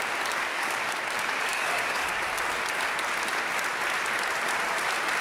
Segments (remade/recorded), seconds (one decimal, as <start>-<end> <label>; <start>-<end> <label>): 0.0-0.5 recorded; 0.5-1.0 remade; 1.0-1.5 recorded; 1.5-2.1 remade; 2.1-5.2 recorded